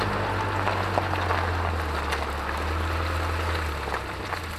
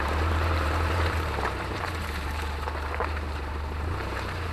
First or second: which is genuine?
first